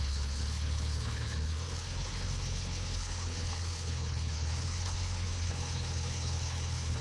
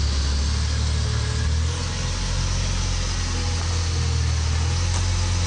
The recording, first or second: second